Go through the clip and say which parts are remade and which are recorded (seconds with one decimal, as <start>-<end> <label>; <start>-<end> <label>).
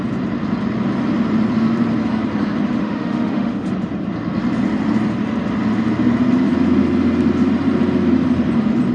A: 0.0-2.8 recorded; 2.8-3.7 remade; 3.7-8.9 recorded